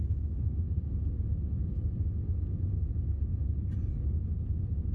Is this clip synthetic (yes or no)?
no